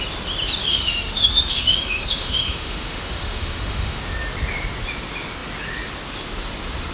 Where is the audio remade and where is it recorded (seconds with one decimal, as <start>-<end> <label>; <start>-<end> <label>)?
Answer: 0.0-0.7 recorded; 0.7-4.0 remade; 4.0-6.9 recorded